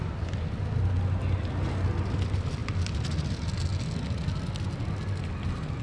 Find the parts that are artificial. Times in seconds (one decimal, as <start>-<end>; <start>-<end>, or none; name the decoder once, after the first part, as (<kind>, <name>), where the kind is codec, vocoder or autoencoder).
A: none